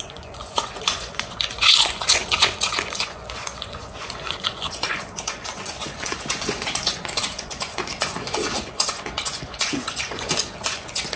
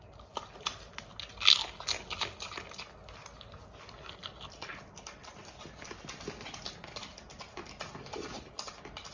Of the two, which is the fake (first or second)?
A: first